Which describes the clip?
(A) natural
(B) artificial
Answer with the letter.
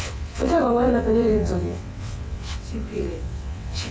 B